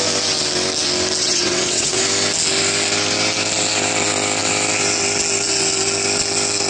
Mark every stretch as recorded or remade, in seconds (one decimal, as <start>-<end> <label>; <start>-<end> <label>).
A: 0.0-1.2 recorded; 1.2-2.0 remade; 2.0-6.7 recorded